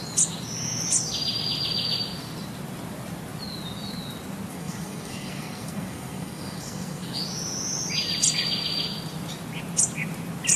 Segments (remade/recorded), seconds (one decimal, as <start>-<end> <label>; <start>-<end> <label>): 0.0-4.5 recorded; 4.5-7.2 remade; 7.2-10.6 recorded